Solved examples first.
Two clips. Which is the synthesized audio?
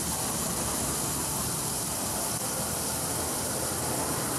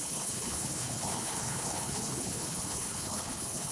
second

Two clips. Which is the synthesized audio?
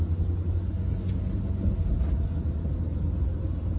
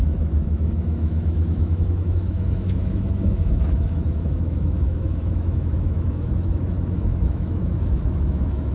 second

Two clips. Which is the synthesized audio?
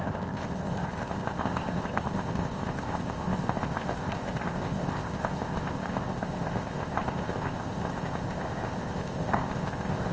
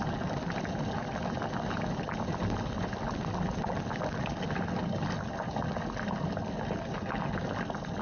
first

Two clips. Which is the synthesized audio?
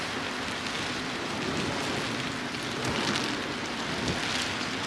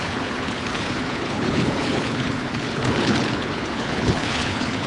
second